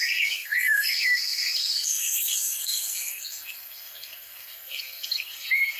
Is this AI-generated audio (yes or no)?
yes